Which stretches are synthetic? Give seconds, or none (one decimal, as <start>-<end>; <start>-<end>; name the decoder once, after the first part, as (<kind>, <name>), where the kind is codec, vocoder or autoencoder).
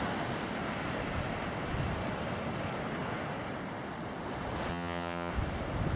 4.7-5.3 (vocoder, HiFi-GAN)